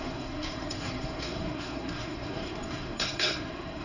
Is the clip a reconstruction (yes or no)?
yes